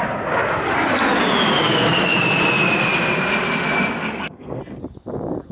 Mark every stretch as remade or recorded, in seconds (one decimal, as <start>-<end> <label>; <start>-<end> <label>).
0.0-4.0 recorded; 4.0-4.6 remade; 4.6-5.5 recorded